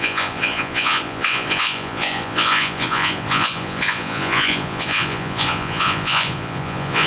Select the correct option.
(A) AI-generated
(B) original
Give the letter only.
A